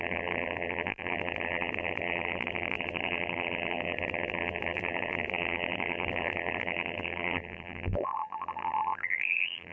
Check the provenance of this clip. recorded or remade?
remade